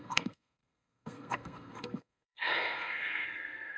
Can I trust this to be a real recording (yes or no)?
no